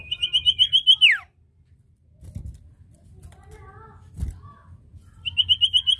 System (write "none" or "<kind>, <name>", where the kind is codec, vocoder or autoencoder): none